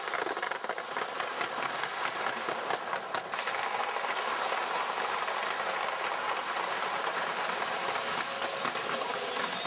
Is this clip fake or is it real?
real